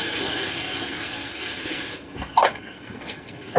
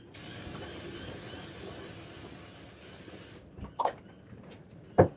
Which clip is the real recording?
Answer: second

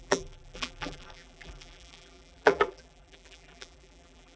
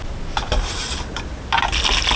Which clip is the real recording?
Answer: second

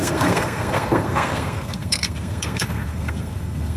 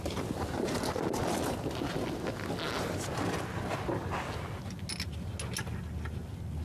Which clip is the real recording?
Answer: second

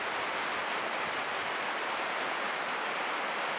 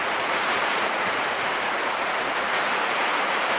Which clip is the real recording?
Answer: first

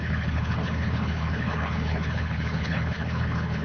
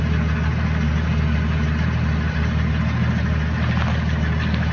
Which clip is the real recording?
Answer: second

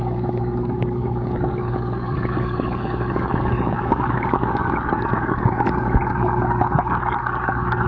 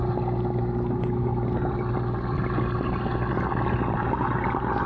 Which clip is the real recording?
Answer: second